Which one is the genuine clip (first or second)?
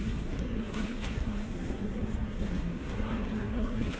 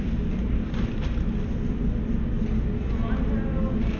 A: second